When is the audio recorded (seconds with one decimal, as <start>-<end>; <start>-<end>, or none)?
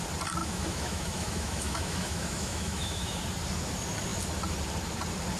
0.0-0.4; 3.2-5.4